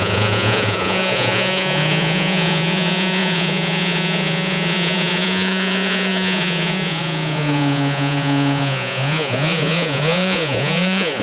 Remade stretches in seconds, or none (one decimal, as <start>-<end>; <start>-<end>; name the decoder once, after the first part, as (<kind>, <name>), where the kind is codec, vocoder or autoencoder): 0.0-11.2 (vocoder, Vocos)